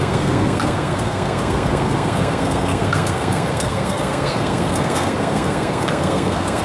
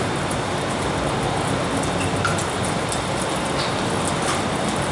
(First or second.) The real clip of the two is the second